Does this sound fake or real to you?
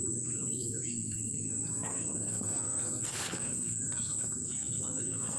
fake